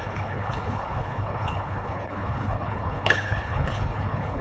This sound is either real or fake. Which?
fake